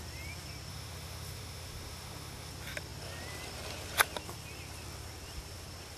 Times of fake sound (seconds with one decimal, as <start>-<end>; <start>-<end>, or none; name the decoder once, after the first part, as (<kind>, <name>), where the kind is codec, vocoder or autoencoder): 0.7-2.5 (autoencoder, DAC-VAE)